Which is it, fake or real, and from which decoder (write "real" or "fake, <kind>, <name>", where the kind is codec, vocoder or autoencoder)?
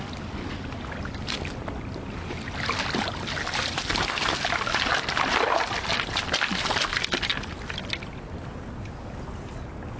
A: real